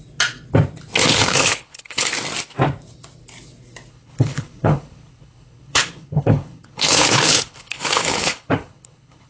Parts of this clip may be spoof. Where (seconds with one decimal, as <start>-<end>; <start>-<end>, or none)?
1.0-2.1; 3.9-9.3